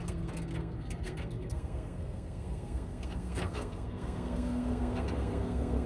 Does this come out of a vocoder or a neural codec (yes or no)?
yes